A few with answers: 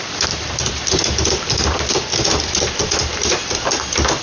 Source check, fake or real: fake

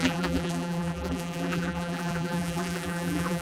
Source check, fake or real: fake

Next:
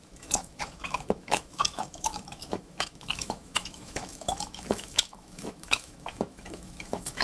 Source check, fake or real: fake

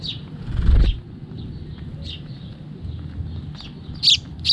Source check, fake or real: real